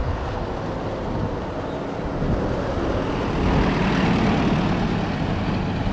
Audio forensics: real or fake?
real